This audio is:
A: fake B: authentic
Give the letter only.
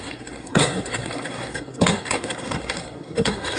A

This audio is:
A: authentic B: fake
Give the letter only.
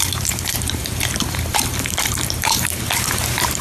B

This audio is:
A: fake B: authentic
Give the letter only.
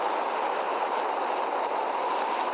A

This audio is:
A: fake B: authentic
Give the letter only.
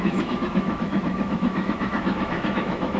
A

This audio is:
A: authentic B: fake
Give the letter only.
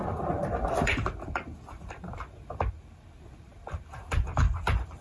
B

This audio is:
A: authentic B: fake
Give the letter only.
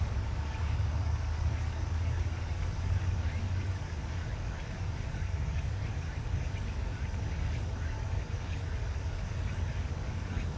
B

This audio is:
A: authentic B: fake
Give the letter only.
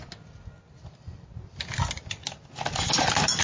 A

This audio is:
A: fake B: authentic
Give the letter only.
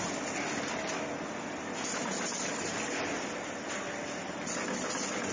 B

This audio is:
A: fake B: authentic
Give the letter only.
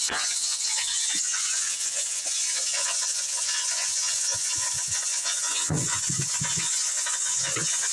A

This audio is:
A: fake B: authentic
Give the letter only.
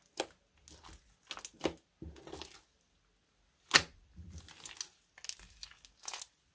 B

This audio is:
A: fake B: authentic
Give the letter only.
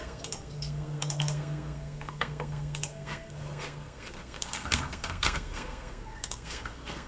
A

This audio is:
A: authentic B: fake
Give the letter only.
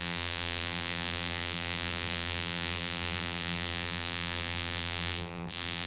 B